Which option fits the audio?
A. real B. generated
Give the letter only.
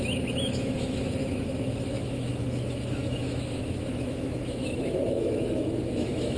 B